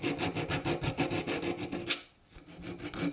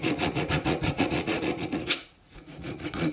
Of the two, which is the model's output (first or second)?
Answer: second